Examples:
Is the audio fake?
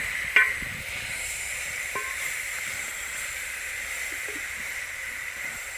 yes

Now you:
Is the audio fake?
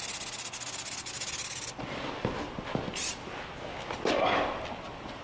no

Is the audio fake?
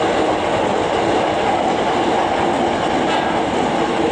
no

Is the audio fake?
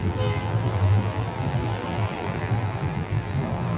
yes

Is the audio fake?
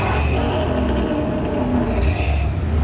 no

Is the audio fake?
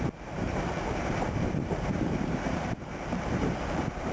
yes